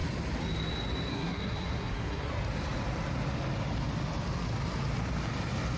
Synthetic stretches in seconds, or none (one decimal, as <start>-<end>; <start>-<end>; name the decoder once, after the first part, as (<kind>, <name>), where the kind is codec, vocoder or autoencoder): 1.1-2.3 (codec, SNAC)